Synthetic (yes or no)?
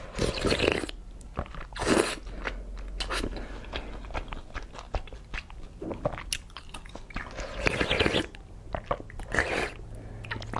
no